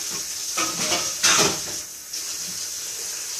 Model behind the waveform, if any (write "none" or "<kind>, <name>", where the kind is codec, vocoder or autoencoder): none